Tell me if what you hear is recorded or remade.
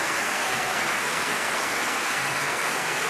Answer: remade